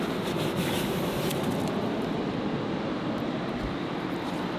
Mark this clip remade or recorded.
recorded